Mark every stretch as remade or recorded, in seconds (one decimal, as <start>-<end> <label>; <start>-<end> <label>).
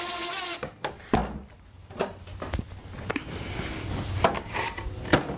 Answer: 0.0-5.4 recorded